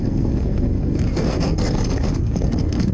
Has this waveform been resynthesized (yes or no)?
yes